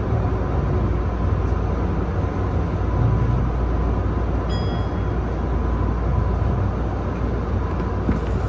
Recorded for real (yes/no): yes